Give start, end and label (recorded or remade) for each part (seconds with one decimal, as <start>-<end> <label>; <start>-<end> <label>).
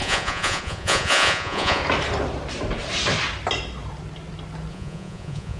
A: 0.0-1.8 remade; 1.8-4.7 recorded; 4.7-5.6 remade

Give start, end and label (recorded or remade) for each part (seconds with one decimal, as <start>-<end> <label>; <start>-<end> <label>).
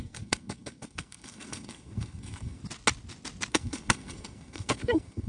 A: 0.0-2.6 remade; 2.6-3.5 recorded; 3.5-5.3 remade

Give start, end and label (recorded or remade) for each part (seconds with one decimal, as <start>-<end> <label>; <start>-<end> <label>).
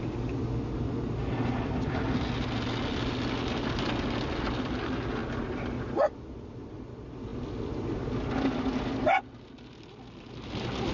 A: 0.0-10.9 recorded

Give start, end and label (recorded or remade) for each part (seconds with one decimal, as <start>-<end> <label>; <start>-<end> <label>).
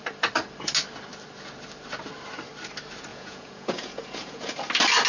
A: 0.0-3.1 recorded; 3.1-4.6 remade; 4.6-5.1 recorded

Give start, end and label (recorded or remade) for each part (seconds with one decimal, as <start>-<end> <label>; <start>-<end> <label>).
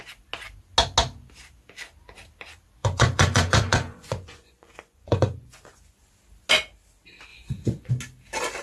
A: 0.0-2.8 recorded; 2.8-6.1 remade; 6.1-7.3 recorded; 7.3-7.9 remade; 7.9-8.6 recorded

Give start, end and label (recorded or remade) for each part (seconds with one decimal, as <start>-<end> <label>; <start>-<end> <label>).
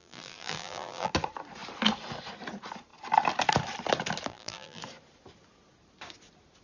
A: 0.0-1.1 remade; 1.1-4.3 recorded; 4.3-4.8 remade; 4.8-6.6 recorded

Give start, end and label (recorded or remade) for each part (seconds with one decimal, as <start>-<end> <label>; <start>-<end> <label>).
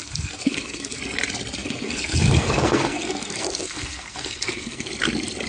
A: 0.0-1.0 remade; 1.0-1.6 recorded; 1.6-4.9 remade; 4.9-5.5 recorded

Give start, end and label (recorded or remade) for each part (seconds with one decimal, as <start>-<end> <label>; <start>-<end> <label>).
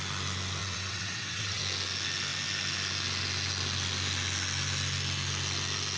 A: 0.0-0.6 recorded; 0.6-1.6 remade; 1.6-6.0 recorded